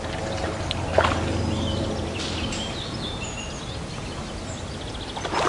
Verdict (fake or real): real